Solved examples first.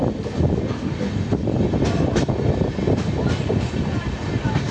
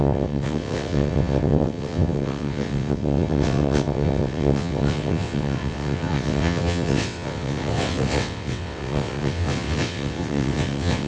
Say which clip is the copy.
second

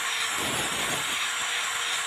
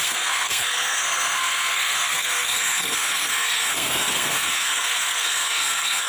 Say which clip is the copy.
second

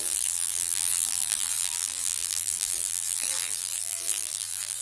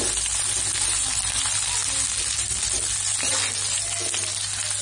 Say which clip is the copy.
first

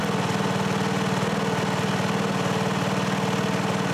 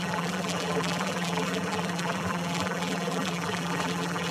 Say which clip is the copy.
second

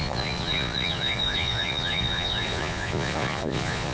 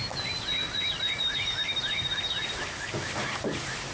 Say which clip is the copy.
first